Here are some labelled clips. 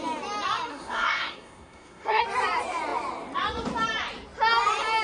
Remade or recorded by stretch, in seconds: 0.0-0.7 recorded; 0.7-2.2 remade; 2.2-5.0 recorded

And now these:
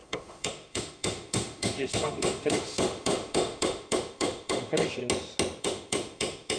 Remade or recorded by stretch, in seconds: 0.0-5.0 remade; 5.0-5.6 recorded; 5.6-6.6 remade

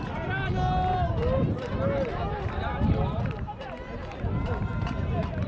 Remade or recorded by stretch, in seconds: 0.0-1.2 recorded; 1.2-1.7 remade; 1.7-2.1 recorded; 2.1-5.5 remade

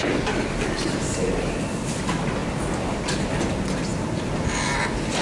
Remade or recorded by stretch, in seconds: 0.0-5.2 recorded